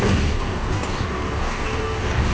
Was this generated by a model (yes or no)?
yes